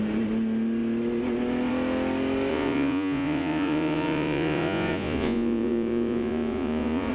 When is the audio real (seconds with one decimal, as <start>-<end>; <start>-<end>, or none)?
0.0-2.5

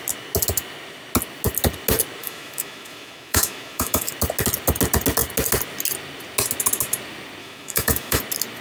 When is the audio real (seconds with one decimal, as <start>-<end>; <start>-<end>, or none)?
0.0-2.2; 4.1-7.4; 8.2-8.6

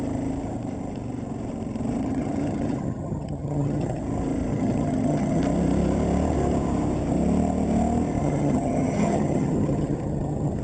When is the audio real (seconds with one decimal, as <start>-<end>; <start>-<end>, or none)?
0.0-2.0; 4.0-4.5; 5.4-8.2

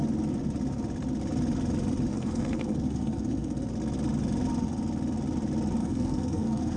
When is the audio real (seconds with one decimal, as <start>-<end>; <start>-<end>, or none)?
0.0-2.1; 3.6-5.8

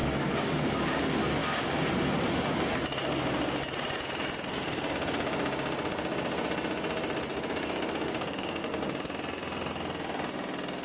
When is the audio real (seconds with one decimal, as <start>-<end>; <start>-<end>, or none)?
1.0-1.4; 1.9-7.3; 8.9-10.8

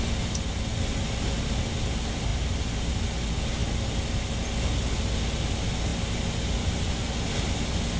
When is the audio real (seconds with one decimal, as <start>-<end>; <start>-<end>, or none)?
0.0-8.0

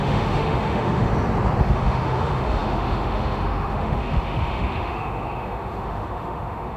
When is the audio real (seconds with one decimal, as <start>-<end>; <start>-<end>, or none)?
1.1-1.6

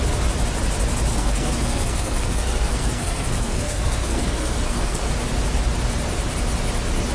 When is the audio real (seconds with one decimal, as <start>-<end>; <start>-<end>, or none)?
0.0-1.1; 5.1-7.1